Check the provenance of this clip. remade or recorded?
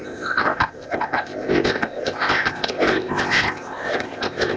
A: remade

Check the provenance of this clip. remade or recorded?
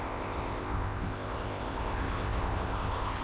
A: remade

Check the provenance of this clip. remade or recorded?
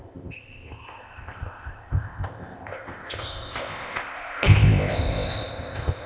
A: remade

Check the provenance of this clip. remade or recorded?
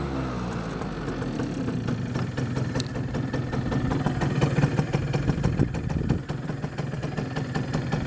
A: recorded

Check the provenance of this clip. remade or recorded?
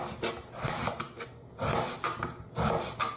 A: recorded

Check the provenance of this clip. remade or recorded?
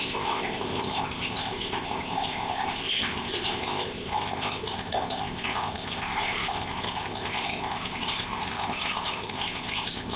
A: remade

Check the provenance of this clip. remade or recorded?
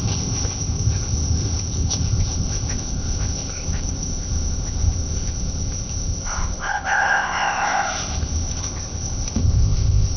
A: remade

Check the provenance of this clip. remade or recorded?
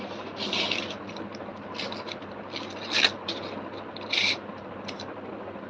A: recorded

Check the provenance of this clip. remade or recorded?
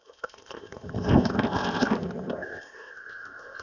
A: remade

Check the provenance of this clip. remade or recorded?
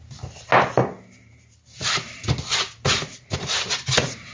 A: recorded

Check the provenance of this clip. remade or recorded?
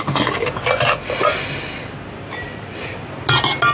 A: recorded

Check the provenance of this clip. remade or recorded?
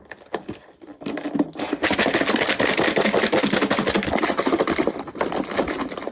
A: recorded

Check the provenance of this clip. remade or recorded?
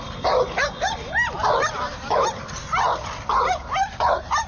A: recorded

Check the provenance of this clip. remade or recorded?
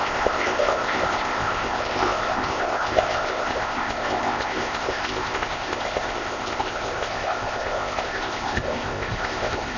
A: remade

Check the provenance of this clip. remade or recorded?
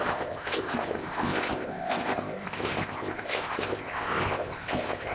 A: remade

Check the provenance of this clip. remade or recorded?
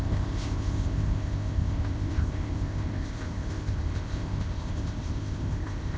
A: remade